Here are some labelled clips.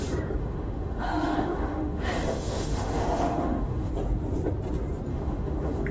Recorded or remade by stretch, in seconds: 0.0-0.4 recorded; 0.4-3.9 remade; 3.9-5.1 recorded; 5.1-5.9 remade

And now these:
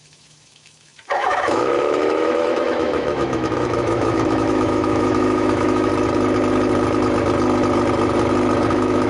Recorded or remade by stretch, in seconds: 0.0-5.9 remade; 5.9-8.7 recorded; 8.7-9.1 remade

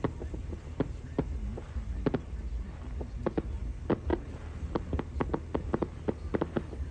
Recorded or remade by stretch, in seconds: 0.0-6.9 recorded